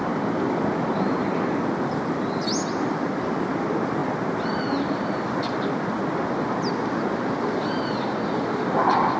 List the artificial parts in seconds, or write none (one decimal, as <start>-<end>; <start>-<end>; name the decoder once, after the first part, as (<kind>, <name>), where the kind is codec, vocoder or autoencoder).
none